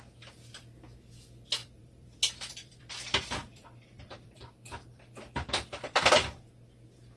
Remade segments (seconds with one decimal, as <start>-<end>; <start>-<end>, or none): 1.6-2.9; 3.4-6.5